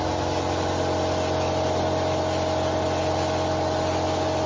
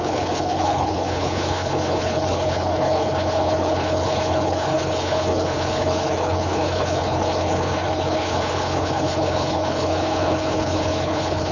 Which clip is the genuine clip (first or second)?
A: first